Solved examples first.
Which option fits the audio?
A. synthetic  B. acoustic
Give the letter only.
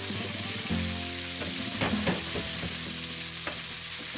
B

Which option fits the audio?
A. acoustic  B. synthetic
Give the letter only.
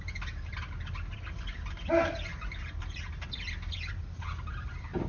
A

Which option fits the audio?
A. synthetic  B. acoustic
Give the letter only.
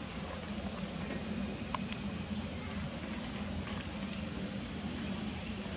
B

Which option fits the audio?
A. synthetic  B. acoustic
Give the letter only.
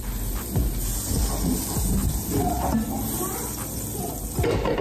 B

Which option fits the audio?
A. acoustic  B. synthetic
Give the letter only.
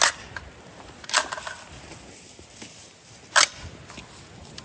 A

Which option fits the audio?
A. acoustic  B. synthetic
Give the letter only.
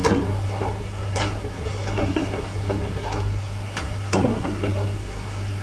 B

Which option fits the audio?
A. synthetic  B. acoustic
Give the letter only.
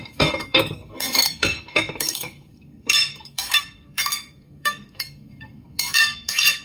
A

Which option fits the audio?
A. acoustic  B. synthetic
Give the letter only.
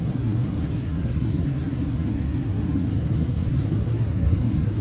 B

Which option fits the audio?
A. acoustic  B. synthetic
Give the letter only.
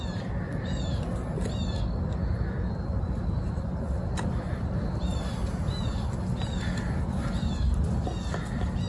A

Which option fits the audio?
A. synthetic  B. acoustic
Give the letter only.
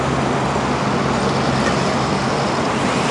B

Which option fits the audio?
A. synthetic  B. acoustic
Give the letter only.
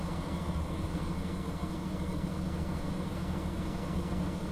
A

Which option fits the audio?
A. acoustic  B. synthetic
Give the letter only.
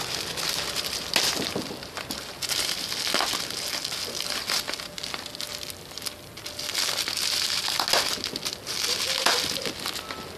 A